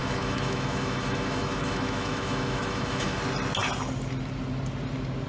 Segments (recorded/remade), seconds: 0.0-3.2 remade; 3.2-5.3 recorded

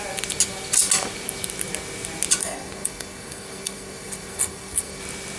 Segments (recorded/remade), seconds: 0.0-2.4 recorded; 2.4-5.0 remade; 5.0-5.4 recorded

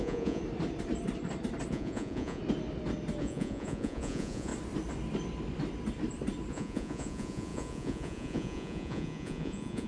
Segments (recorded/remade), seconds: 0.0-0.4 remade; 0.4-1.7 recorded; 1.7-2.4 remade; 2.4-3.2 recorded; 3.2-4.5 remade; 4.5-6.5 recorded; 6.5-9.9 remade